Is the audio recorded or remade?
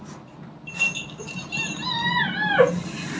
recorded